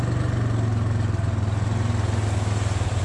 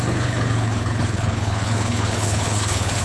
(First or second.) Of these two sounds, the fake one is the second